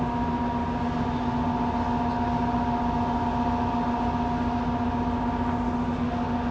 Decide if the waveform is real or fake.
real